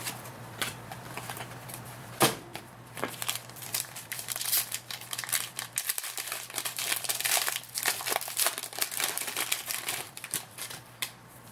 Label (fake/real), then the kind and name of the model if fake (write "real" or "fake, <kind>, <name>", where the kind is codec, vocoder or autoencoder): fake, vocoder, BigVGAN v2